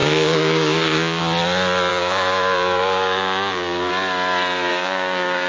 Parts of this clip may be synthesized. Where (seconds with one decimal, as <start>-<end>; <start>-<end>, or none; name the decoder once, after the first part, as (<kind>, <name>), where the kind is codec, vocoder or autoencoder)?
0.0-1.2 (codec, DAC); 1.9-3.9; 4.7-5.5